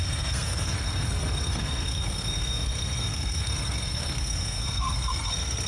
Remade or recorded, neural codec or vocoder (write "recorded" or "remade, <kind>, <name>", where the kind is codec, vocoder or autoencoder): remade, codec, SNAC